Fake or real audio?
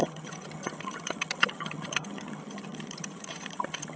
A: fake